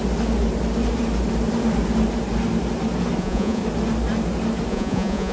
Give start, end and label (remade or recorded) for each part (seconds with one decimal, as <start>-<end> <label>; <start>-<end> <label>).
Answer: 0.0-3.2 recorded; 3.2-3.6 remade; 3.6-4.7 recorded; 4.7-5.3 remade